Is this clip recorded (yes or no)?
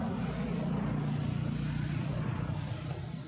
yes